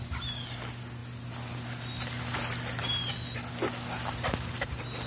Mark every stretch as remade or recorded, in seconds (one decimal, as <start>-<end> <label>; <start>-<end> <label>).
0.0-5.1 recorded